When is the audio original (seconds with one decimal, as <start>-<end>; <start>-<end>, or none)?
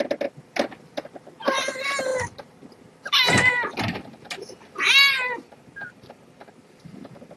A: 0.0-7.4